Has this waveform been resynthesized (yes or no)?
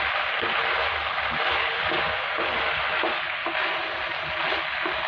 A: no